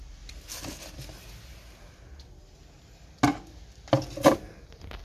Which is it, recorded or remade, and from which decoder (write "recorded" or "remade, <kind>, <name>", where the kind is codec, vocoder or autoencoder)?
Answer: recorded